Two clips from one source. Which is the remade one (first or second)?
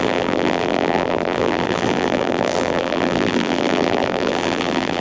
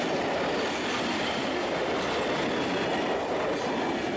first